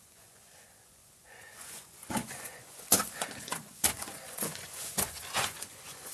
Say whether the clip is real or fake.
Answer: fake